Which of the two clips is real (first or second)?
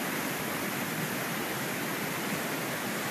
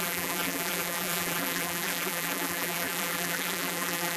first